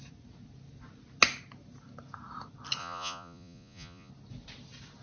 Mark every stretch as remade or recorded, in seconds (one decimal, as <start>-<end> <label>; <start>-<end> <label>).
0.0-2.8 recorded; 2.8-4.1 remade; 4.1-5.0 recorded